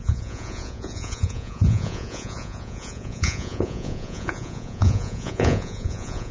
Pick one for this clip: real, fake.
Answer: fake